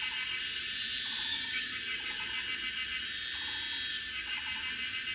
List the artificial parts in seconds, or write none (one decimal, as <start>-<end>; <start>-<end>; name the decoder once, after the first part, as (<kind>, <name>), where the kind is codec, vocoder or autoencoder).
1.3-2.3 (codec, DAC); 3.9-4.4